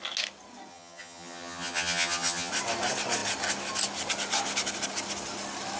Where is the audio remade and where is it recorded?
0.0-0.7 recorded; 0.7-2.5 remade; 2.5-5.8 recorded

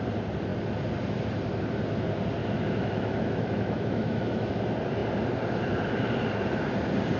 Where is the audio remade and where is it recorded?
0.0-2.4 recorded; 2.4-4.5 remade; 4.5-7.2 recorded